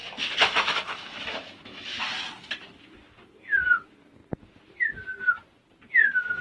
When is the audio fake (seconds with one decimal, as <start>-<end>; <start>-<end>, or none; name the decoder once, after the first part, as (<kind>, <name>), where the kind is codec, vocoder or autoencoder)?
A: 0.0-2.0 (autoencoder, DAC-VAE)